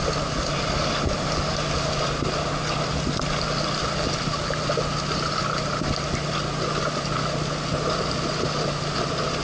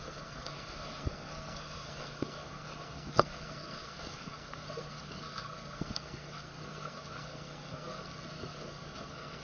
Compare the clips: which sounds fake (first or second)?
second